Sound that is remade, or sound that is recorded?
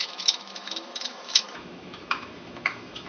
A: remade